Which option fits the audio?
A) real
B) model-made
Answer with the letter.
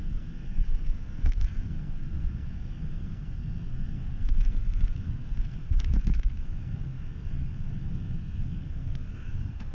B